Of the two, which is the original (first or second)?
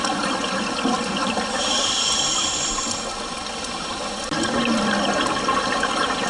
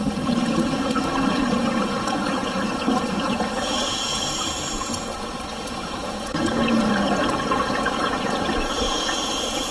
first